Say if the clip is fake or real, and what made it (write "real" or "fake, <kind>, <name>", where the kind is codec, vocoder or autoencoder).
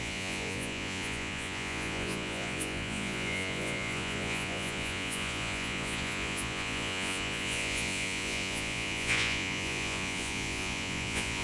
fake, vocoder, Vocos